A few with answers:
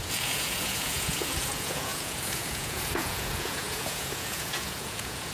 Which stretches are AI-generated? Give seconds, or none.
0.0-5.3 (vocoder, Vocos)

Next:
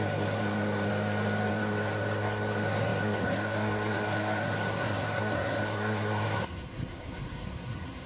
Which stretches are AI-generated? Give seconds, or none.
0.0-0.9 (codec, SNAC); 1.5-8.1

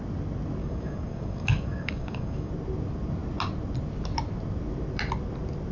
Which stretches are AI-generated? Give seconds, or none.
0.6-2.5 (codec, DAC)

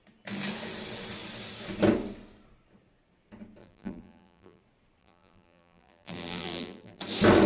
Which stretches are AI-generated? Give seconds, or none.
3.6-4.6 (vocoder, BigVGAN v2); 5.0-7.0